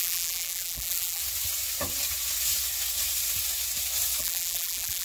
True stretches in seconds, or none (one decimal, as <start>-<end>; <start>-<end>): 1.2-4.2